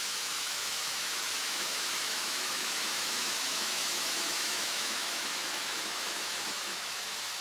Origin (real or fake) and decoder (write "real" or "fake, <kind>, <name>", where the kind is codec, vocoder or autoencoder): fake, autoencoder, DAC-VAE